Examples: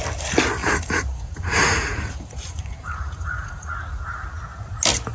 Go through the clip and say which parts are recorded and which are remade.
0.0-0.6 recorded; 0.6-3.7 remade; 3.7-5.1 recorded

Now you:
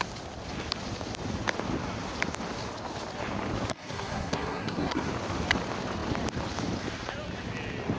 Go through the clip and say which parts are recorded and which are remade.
0.0-3.7 recorded; 3.7-5.1 remade; 5.1-8.0 recorded

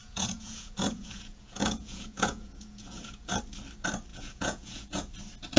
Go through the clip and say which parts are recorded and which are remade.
0.0-3.4 remade; 3.4-4.1 recorded; 4.1-5.1 remade; 5.1-5.6 recorded

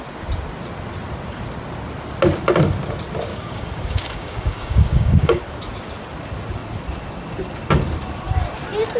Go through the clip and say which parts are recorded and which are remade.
0.0-3.3 recorded; 3.3-5.4 remade; 5.4-9.0 recorded

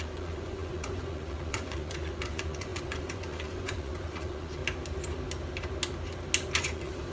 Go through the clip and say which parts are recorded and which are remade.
0.0-4.6 remade; 4.6-6.6 recorded; 6.6-7.1 remade

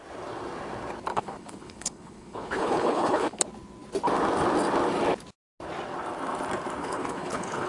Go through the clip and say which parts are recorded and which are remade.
0.0-1.1 recorded; 1.1-3.4 remade; 3.4-6.8 recorded; 6.8-7.7 remade